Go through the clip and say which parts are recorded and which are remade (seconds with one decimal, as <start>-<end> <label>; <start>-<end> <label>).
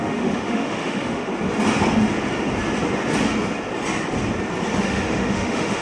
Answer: 0.0-1.3 remade; 1.3-4.8 recorded; 4.8-5.8 remade